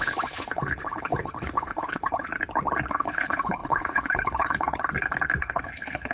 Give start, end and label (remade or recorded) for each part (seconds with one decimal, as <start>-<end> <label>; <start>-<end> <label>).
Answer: 0.0-2.3 remade; 2.3-2.9 recorded; 2.9-4.8 remade; 4.8-5.4 recorded; 5.4-6.1 remade